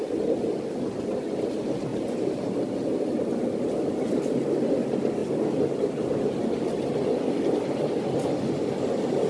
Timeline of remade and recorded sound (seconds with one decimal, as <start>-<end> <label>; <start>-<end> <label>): 0.0-1.9 recorded; 1.9-2.6 remade; 2.6-5.2 recorded; 5.2-8.8 remade; 8.8-9.3 recorded